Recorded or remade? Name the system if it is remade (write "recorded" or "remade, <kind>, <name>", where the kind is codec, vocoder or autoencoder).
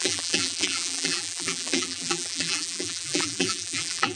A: remade, vocoder, BigVGAN v2